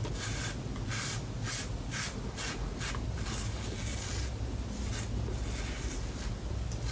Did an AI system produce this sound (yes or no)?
no